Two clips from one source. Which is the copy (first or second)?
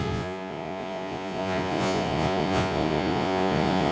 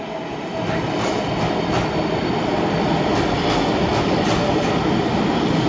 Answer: first